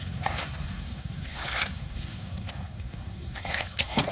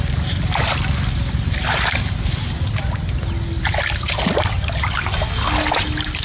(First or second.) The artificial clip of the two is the first